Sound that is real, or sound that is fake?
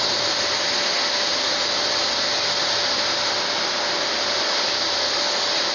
real